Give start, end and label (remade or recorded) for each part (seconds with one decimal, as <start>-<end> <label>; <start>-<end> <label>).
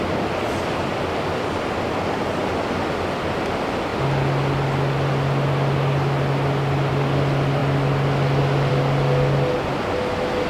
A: 0.0-10.5 recorded